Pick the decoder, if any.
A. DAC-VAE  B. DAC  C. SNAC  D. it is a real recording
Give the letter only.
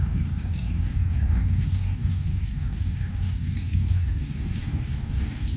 B